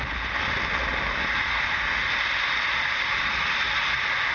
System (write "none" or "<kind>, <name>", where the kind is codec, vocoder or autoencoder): none